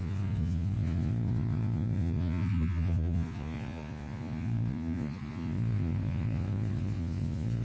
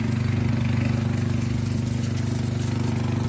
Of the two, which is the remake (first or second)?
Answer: first